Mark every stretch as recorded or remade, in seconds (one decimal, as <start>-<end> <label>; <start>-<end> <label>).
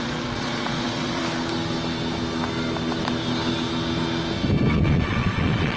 0.0-1.2 remade; 1.2-4.7 recorded; 4.7-5.8 remade